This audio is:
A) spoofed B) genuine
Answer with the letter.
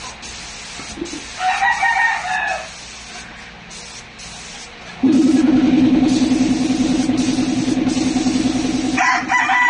B